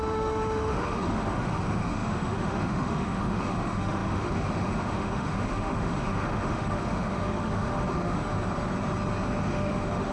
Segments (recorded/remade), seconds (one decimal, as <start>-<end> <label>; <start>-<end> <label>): 0.0-8.3 remade; 8.3-9.4 recorded; 9.4-10.1 remade